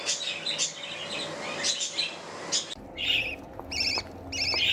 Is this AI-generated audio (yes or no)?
no